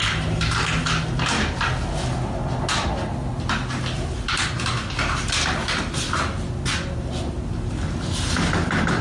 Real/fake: real